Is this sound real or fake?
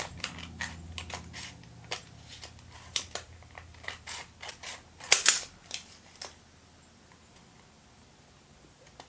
real